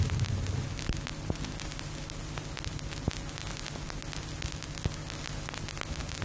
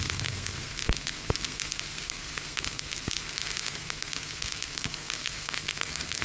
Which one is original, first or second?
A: first